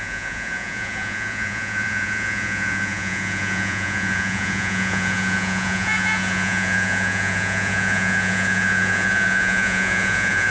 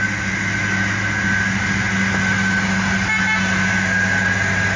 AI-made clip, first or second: first